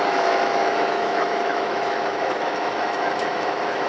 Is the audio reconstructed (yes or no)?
yes